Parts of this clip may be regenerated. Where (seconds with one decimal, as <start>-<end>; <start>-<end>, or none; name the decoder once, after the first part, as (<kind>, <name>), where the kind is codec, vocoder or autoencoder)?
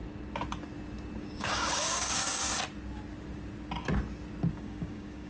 1.2-2.4 (codec, DAC); 4.5-5.3